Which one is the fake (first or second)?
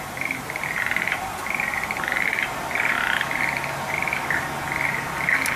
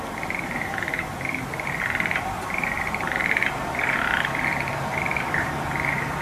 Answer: second